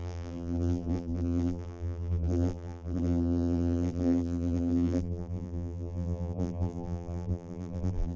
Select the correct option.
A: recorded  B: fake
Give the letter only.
B